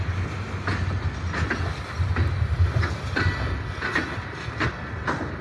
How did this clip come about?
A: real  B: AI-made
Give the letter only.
A